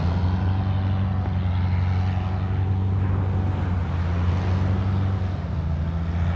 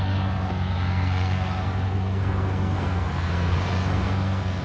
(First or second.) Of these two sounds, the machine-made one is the second